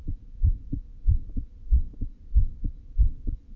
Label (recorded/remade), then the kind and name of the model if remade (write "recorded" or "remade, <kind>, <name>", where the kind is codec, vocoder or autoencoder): recorded